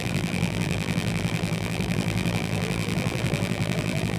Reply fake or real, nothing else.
fake